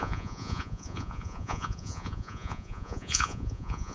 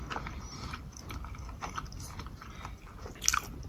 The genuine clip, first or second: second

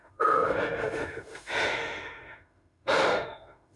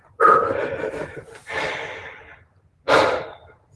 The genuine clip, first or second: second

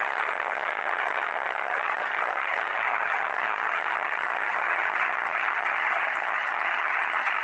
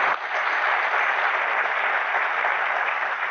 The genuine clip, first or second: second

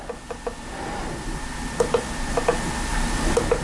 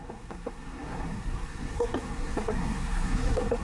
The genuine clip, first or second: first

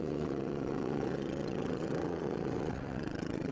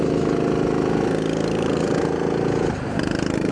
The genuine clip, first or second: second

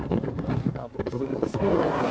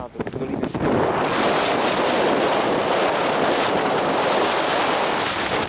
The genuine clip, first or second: second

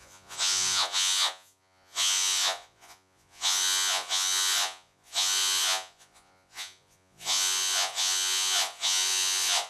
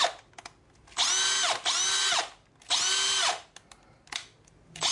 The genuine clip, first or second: second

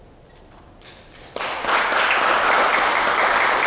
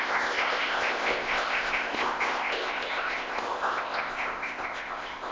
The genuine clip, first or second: first